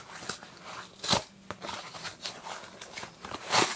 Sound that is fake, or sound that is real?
real